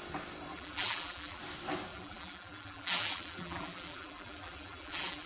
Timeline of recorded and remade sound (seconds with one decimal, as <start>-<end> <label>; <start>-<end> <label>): 0.0-0.5 recorded; 0.5-1.4 remade; 1.4-1.9 recorded; 1.9-5.3 remade